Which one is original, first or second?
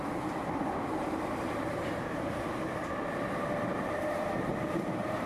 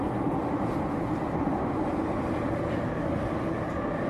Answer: second